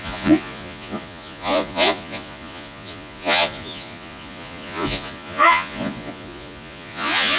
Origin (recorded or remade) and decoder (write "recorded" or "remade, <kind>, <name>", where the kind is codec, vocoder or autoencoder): remade, vocoder, Vocos